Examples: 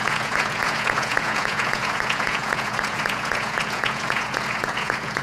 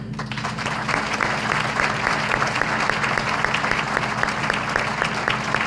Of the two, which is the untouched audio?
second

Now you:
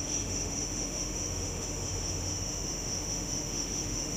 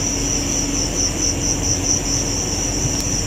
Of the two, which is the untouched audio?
second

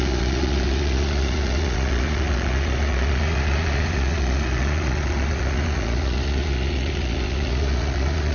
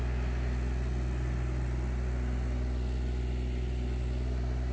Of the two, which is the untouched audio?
second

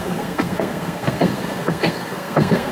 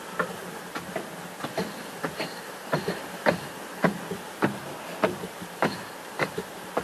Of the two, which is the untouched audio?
second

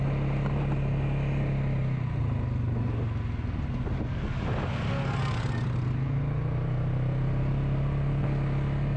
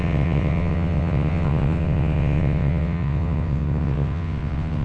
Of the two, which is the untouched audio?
first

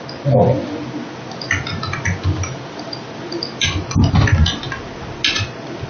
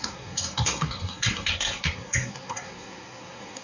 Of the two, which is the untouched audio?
first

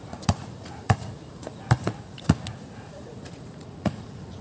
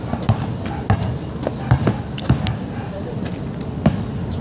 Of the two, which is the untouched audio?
second